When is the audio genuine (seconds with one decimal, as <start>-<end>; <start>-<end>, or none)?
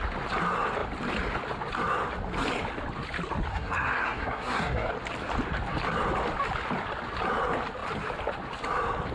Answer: 0.0-3.5; 4.9-9.1